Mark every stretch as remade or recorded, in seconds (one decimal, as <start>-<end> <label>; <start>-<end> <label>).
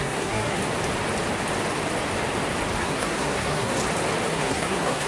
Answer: 0.0-0.6 remade; 0.6-2.8 recorded; 2.8-3.8 remade; 3.8-4.3 recorded; 4.3-5.1 remade